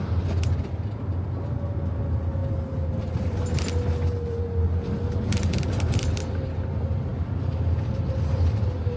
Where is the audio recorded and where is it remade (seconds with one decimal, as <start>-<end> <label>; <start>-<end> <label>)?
0.0-9.0 recorded